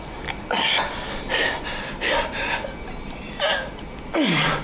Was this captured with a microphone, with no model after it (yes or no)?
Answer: yes